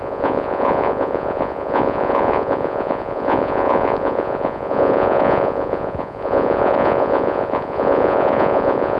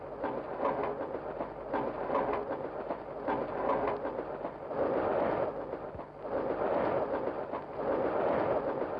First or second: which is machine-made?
first